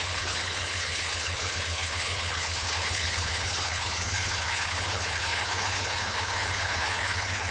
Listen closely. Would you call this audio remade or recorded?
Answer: remade